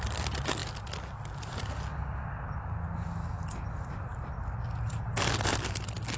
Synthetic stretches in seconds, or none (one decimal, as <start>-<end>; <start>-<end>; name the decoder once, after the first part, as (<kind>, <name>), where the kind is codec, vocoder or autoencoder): none